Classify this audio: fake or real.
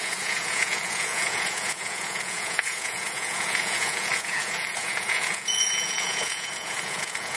fake